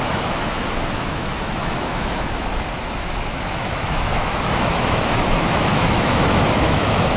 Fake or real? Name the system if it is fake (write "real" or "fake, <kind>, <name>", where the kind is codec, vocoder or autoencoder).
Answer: fake, autoencoder, DAC-VAE